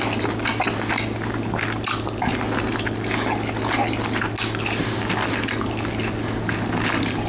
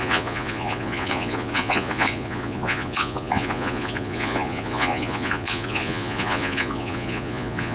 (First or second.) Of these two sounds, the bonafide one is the first